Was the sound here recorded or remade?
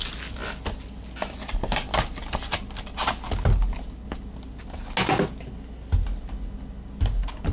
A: recorded